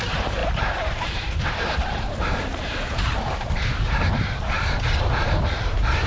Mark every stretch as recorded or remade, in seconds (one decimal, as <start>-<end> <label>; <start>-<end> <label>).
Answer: 0.0-6.1 remade